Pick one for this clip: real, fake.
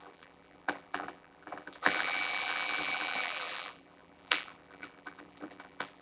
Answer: fake